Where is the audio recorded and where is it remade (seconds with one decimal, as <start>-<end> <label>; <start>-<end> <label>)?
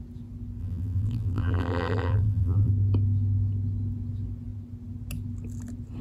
0.0-0.6 recorded; 0.6-2.7 remade; 2.7-6.0 recorded